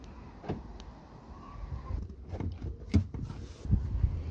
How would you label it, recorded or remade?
recorded